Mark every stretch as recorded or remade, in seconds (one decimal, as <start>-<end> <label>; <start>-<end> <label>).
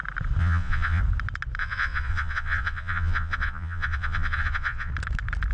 0.0-0.4 recorded; 0.4-1.0 remade; 1.0-1.6 recorded; 1.6-4.9 remade; 4.9-5.5 recorded